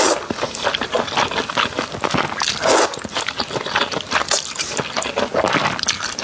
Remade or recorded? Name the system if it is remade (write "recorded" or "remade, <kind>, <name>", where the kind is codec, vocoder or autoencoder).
recorded